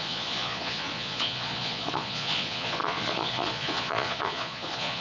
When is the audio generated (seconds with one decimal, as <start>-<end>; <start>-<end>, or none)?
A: 0.0-5.0